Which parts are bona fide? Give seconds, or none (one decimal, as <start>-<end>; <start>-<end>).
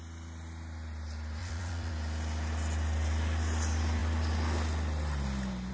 0.0-1.4; 1.9-5.7